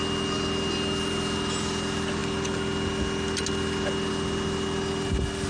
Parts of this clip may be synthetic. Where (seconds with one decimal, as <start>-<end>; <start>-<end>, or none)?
none